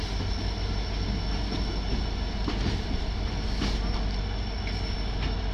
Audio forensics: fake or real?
real